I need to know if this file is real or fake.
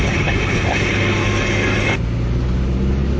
real